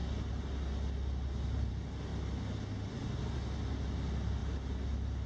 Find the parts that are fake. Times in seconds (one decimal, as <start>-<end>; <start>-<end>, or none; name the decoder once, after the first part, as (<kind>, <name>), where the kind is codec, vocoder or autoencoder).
none